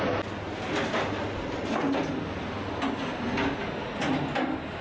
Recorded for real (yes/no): yes